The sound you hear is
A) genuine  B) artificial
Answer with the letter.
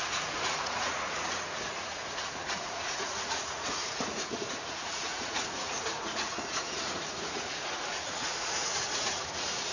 B